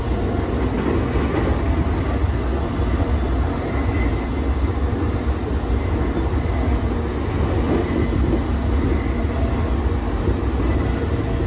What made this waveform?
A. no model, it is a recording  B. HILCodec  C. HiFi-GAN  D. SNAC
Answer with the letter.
A